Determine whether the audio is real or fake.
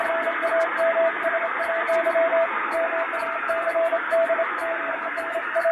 real